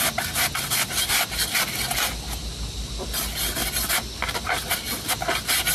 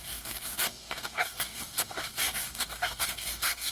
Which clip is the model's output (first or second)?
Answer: second